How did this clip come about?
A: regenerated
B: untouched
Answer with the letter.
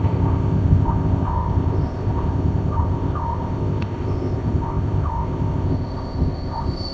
A